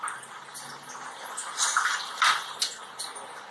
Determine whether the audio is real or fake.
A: real